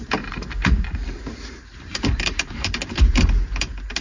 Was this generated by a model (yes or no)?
yes